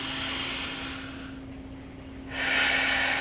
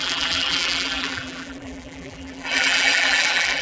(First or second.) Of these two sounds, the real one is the first